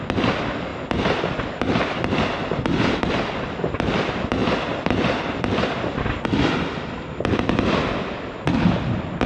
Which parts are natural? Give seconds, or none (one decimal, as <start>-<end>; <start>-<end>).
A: 0.0-9.3